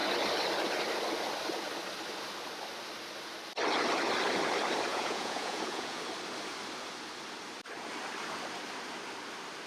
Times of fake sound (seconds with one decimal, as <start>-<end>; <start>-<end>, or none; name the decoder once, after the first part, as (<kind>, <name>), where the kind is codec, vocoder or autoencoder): 4.9-6.0 (vocoder, Vocos)

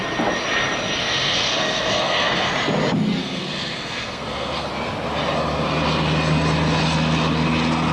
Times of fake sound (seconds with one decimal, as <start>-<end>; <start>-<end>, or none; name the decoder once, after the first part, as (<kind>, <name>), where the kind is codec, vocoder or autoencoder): 1.0-2.5 (codec, SNAC); 3.2-4.7